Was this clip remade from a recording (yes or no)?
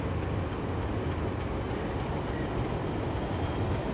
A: no